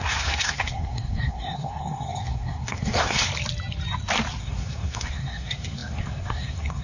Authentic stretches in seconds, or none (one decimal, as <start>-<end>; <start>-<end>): 3.3-4.4